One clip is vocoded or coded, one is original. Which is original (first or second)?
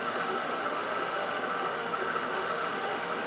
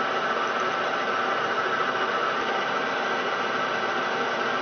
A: second